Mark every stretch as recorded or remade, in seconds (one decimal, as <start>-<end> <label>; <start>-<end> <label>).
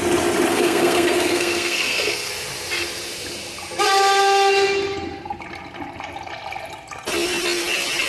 0.0-0.5 recorded; 0.5-2.3 remade; 2.3-8.1 recorded